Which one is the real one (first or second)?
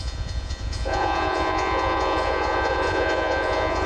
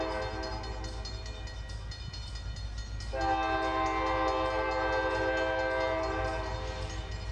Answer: second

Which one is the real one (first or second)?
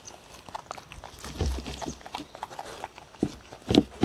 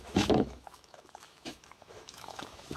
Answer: first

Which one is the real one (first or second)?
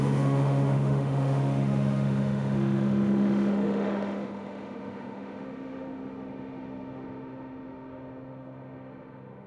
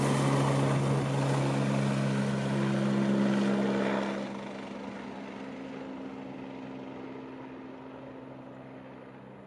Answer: second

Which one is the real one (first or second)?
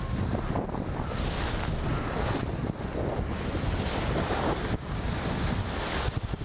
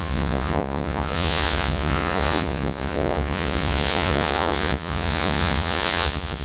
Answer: first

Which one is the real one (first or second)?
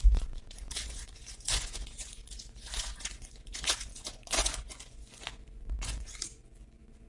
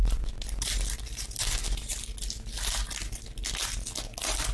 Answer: second